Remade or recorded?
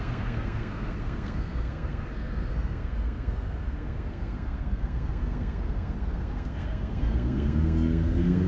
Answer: remade